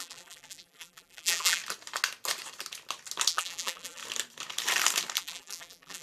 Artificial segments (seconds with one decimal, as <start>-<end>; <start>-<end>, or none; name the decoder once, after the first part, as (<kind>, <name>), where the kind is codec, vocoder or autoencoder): 0.0-1.6 (vocoder, BigVGAN v2); 3.3-4.0; 5.2-6.0